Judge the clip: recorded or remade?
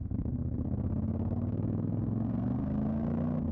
remade